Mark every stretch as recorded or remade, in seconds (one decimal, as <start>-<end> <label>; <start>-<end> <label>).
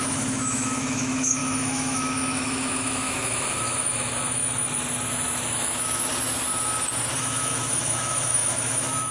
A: 0.0-4.4 remade; 4.4-5.1 recorded; 5.1-6.1 remade; 6.1-7.2 recorded; 7.2-9.1 remade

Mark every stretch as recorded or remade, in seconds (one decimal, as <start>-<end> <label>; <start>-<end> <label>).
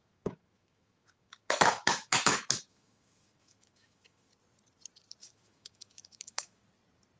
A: 0.0-4.3 remade; 4.3-5.2 recorded; 5.2-6.6 remade; 6.6-7.2 recorded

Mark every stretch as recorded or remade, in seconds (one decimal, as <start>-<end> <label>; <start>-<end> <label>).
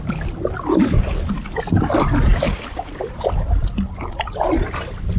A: 0.0-5.2 recorded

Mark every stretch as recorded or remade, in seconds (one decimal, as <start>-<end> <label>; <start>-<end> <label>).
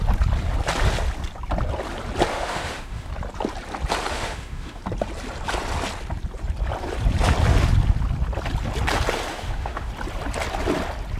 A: 0.0-2.3 recorded; 2.3-3.1 remade; 3.1-4.1 recorded; 4.1-4.8 remade; 4.8-9.3 recorded; 9.3-9.9 remade; 9.9-11.2 recorded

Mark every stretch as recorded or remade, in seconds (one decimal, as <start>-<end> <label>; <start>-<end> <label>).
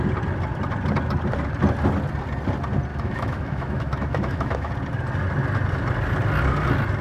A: 0.0-2.9 recorded; 2.9-4.7 remade; 4.7-7.0 recorded